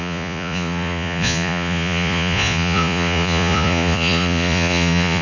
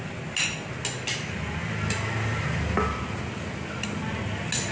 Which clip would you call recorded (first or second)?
second